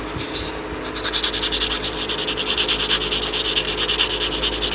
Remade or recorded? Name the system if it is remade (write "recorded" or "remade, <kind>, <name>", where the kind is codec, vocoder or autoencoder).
recorded